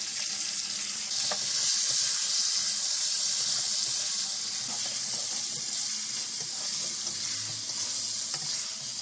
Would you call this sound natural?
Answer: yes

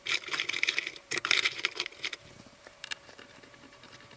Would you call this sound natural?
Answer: no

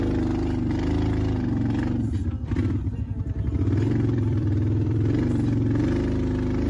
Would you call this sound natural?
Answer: no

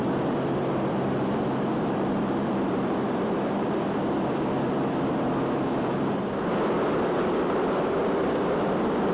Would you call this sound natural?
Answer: no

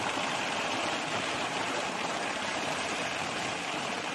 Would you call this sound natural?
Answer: no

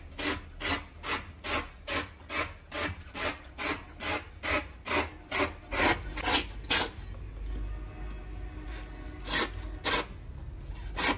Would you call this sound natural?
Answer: yes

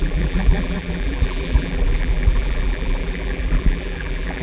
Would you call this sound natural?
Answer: no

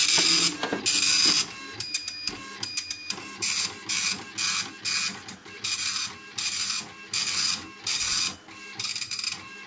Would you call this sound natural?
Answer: yes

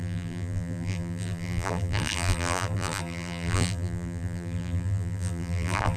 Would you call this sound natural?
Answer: no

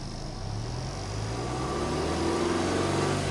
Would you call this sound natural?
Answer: yes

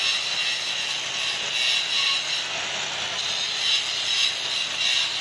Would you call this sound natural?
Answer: yes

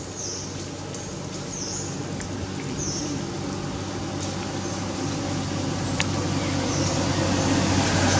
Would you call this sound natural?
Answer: yes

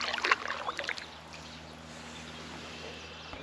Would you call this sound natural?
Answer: yes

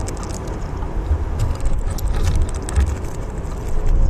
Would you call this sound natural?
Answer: yes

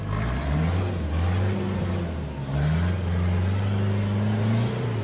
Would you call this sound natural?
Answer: yes